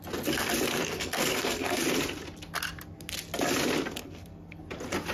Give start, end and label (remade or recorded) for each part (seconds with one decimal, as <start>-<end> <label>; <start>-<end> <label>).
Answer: 0.0-0.7 recorded; 0.7-1.8 remade; 1.8-4.0 recorded; 4.0-4.6 remade; 4.6-5.1 recorded